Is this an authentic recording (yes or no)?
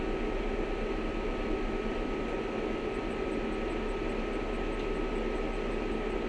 yes